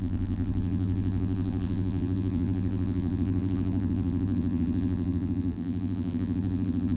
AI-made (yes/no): yes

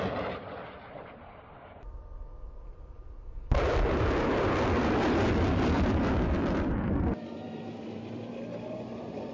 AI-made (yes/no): yes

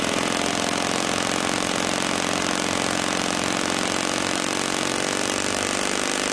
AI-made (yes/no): no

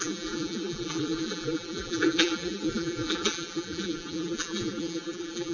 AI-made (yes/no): yes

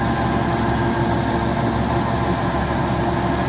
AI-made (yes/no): no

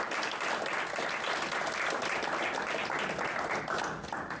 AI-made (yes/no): no